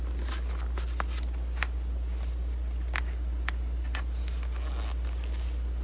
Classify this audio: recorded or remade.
recorded